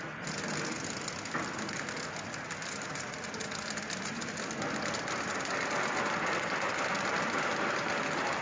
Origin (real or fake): real